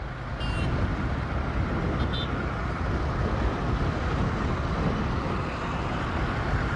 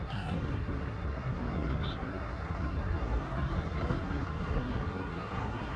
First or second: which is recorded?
first